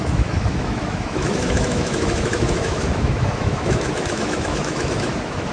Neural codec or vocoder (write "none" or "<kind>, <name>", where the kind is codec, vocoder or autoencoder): autoencoder, DAC-VAE